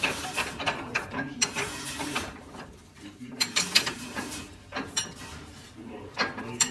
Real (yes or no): no